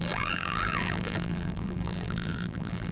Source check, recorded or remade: remade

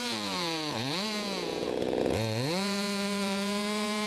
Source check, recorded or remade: remade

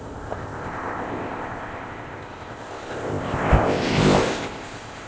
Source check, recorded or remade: remade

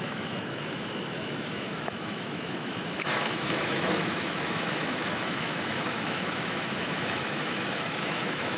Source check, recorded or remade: remade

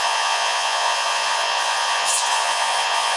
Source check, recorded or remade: remade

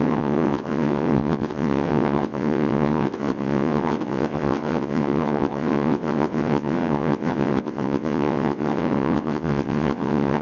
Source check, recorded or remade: remade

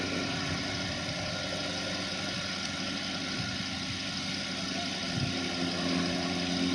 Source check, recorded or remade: recorded